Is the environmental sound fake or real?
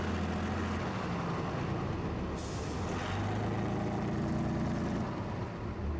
real